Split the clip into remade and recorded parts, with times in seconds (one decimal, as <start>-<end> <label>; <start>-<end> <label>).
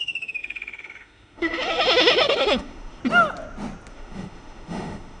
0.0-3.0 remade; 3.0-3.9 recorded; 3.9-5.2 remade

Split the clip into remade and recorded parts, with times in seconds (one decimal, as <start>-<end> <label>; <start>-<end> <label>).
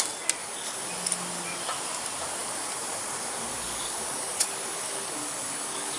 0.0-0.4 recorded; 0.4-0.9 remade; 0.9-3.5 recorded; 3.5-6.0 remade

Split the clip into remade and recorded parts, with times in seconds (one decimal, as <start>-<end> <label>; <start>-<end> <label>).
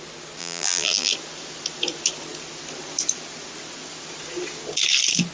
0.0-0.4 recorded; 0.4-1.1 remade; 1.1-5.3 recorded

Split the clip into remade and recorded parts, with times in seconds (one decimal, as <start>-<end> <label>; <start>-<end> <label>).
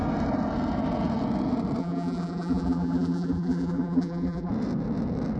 0.0-1.8 recorded; 1.8-4.5 remade; 4.5-5.4 recorded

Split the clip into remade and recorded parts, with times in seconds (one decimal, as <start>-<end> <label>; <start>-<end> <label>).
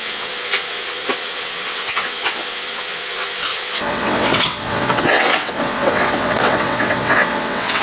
0.0-7.8 remade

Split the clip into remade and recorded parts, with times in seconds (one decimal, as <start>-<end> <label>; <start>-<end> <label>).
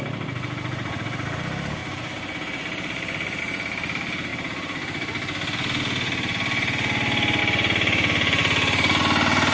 0.0-9.5 recorded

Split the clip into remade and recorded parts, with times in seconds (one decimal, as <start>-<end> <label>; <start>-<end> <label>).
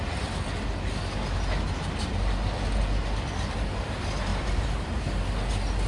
0.0-4.3 recorded; 4.3-5.0 remade; 5.0-5.9 recorded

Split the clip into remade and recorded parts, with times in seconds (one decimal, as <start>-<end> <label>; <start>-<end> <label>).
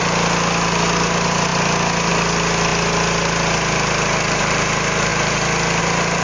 0.0-2.7 remade; 2.7-4.4 recorded; 4.4-6.2 remade